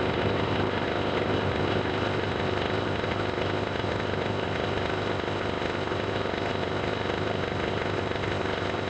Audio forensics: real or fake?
fake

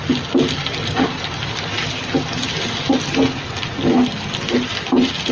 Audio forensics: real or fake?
real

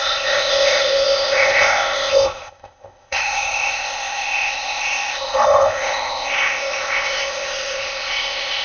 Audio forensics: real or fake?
fake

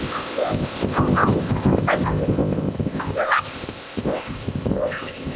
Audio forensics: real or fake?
fake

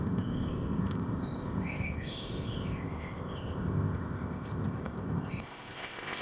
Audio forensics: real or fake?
fake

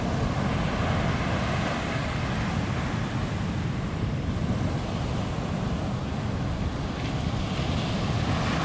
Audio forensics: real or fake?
real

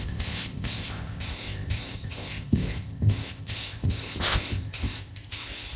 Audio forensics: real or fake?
fake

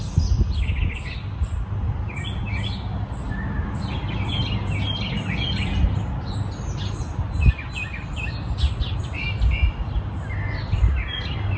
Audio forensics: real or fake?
real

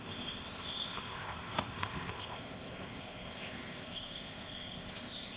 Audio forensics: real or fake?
fake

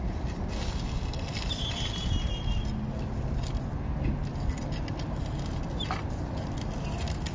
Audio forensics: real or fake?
real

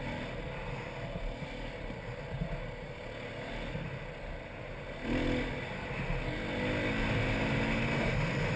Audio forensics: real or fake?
real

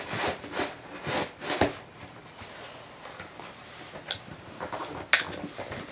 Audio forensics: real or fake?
real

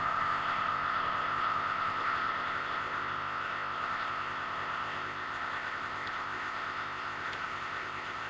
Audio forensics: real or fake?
fake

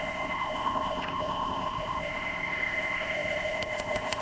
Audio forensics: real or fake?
fake